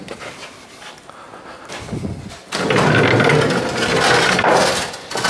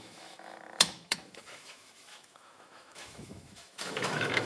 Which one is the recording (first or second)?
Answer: first